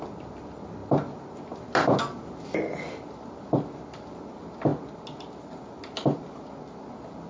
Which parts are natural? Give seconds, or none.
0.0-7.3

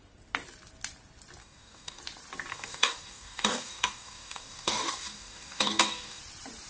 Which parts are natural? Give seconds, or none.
0.0-1.4; 2.0-2.5; 6.2-6.7

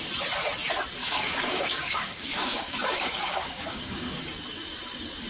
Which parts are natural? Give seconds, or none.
0.0-1.0; 4.2-5.3